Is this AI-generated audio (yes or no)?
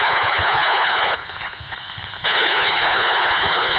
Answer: yes